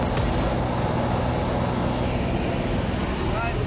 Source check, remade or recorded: recorded